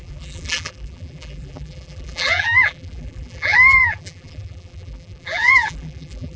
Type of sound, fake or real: fake